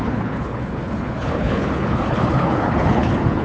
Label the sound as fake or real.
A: fake